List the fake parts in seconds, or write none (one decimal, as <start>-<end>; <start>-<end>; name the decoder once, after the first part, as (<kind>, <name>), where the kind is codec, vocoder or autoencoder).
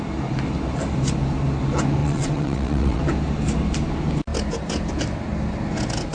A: 2.0-3.0 (vocoder, WaveNeXt)